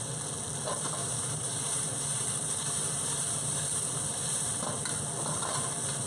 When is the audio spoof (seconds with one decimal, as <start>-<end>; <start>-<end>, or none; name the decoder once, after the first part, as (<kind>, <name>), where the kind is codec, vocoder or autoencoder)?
1.0-4.7 (vocoder, BigVGAN v2)